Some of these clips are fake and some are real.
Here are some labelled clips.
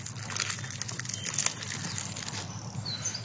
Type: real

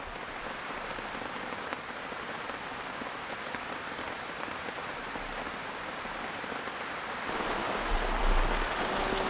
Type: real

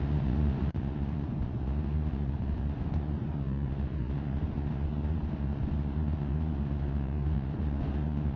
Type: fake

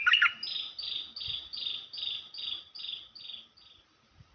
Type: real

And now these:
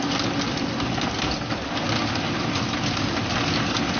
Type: real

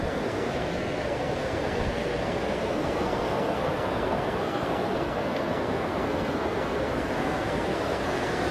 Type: fake